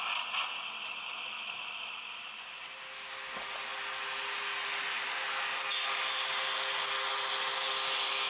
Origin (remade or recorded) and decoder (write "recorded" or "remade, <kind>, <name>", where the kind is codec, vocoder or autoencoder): recorded